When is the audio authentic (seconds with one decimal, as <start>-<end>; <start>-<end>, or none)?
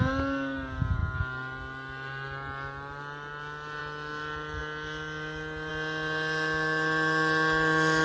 0.0-8.0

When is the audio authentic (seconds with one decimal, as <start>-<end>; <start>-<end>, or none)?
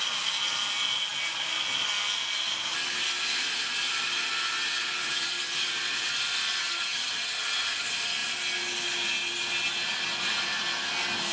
0.0-6.6; 7.1-11.3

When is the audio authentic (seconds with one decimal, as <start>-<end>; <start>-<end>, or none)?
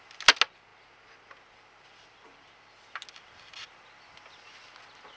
0.0-5.2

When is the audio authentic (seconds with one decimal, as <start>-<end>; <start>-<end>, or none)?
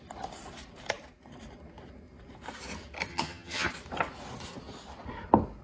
0.0-3.1; 3.7-5.6